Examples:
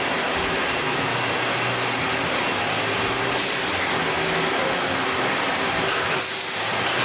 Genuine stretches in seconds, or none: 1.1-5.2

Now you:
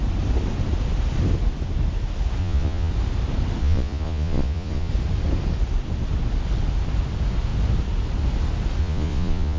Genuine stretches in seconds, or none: 0.0-2.4; 2.9-3.6; 4.9-8.8

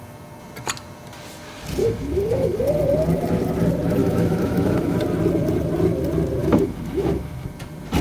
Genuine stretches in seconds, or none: 0.0-1.8; 2.6-4.0; 5.0-6.4; 7.5-8.0